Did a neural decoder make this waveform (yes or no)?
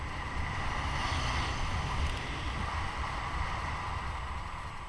no